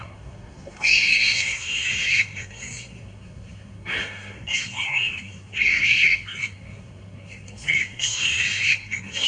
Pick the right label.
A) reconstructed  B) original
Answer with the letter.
A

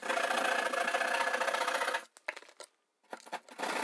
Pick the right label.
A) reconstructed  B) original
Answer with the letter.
B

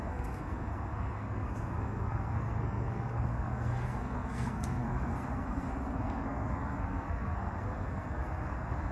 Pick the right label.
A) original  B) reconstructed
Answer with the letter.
B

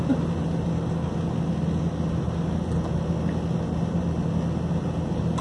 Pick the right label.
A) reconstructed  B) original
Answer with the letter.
B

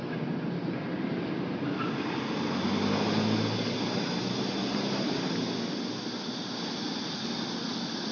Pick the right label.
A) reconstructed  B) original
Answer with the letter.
B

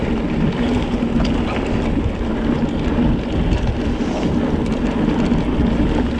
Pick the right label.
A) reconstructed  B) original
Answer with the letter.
B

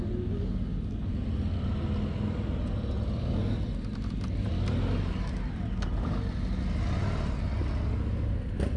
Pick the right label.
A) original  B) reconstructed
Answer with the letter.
A